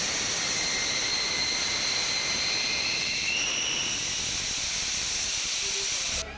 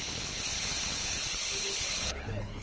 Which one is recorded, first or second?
first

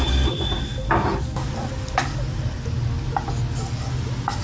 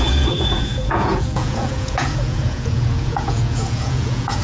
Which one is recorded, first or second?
first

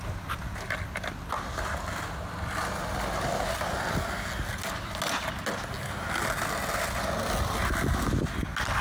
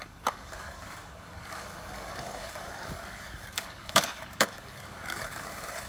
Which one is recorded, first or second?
first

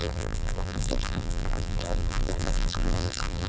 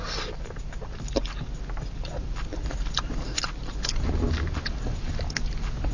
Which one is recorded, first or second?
second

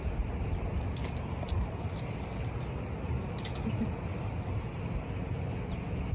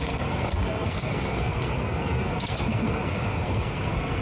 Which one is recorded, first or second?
first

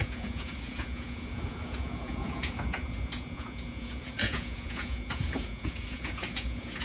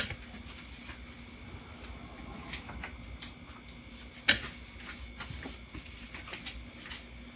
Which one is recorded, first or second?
second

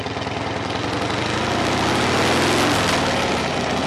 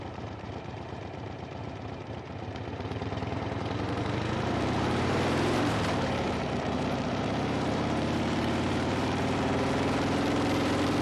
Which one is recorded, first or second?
first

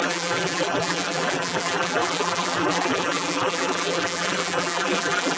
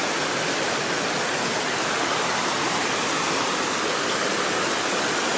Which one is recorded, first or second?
second